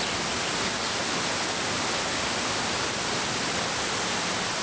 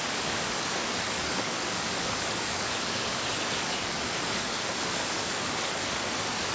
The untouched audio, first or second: first